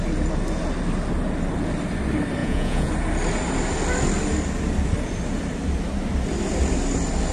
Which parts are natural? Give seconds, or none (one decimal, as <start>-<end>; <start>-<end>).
0.0-2.4; 2.9-7.3